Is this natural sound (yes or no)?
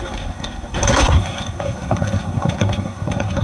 no